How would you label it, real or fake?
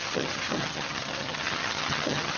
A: fake